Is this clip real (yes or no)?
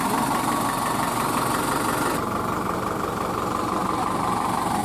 yes